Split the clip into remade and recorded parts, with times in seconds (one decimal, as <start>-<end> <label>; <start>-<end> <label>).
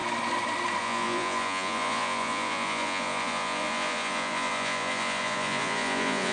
0.0-0.8 recorded; 0.8-6.3 remade